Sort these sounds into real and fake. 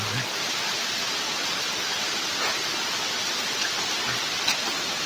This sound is real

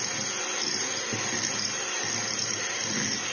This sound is real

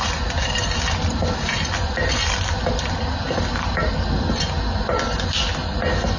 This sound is real